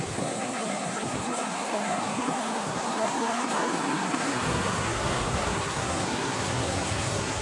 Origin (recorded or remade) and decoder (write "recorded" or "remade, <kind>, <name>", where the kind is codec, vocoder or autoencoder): remade, codec, SNAC